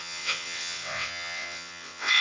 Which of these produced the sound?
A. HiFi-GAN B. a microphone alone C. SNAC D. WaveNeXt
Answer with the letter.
D